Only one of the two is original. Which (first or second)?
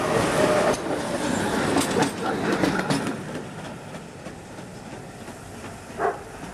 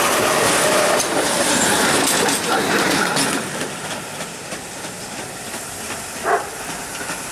first